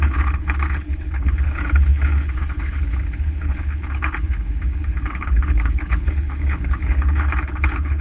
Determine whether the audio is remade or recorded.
remade